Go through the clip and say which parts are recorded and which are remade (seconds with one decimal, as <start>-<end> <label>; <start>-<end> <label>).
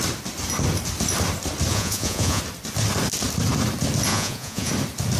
0.0-1.7 recorded; 1.7-2.4 remade; 2.4-4.1 recorded; 4.1-4.7 remade; 4.7-5.2 recorded